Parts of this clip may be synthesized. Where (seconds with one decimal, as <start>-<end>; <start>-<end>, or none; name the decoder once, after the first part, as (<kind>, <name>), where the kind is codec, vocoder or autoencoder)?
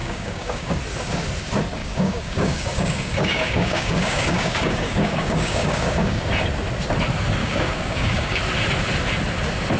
0.0-0.8 (codec, DAC); 1.8-6.3; 7.4-8.4